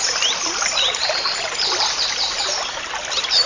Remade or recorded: recorded